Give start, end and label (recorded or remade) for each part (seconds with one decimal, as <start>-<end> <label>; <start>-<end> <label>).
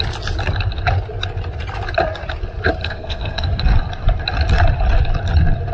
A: 0.0-2.8 recorded; 2.8-3.6 remade; 3.6-5.7 recorded